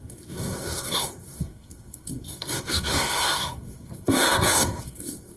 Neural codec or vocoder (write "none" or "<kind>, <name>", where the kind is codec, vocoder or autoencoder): codec, SNAC